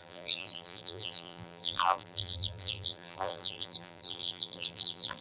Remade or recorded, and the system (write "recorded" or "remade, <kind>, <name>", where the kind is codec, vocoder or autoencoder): remade, vocoder, BigVGAN v2